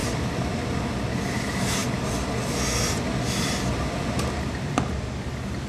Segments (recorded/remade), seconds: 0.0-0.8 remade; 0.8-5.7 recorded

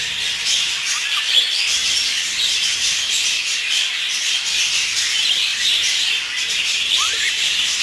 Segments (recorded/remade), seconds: 0.0-1.8 recorded; 1.8-4.0 remade; 4.0-5.5 recorded; 5.5-7.8 remade

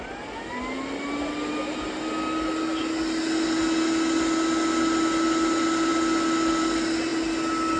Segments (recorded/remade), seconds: 0.0-7.8 recorded

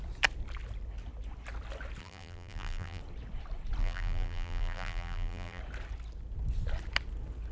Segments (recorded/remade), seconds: 0.0-2.0 recorded; 2.0-3.0 remade; 3.0-3.8 recorded; 3.8-5.6 remade; 5.6-7.5 recorded

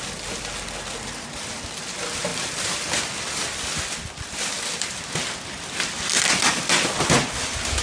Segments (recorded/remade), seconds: 0.0-2.3 recorded; 2.3-5.0 remade; 5.0-6.4 recorded; 6.4-6.9 remade; 6.9-7.8 recorded

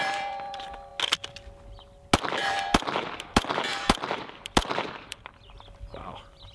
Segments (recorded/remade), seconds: 0.0-0.9 remade; 0.9-2.2 recorded; 2.2-6.5 remade